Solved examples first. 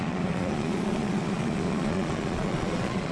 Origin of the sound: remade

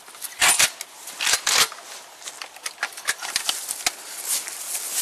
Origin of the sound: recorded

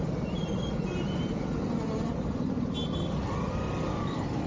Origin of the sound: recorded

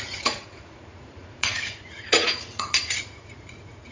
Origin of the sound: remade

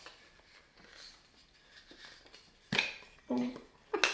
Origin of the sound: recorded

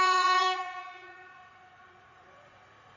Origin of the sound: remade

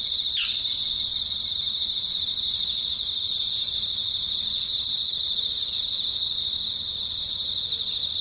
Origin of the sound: recorded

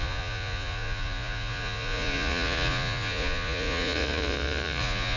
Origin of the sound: remade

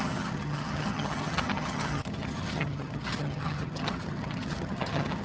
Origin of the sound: remade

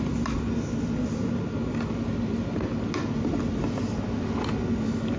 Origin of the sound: recorded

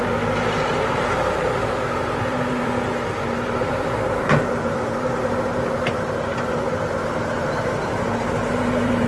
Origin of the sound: remade